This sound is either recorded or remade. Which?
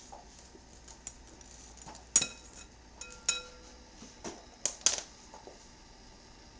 recorded